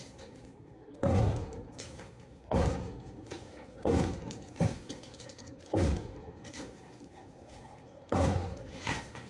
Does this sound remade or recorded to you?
remade